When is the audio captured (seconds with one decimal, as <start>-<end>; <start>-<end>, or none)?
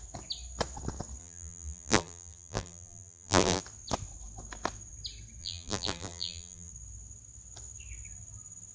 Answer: 0.0-1.2; 3.6-5.4; 6.7-8.7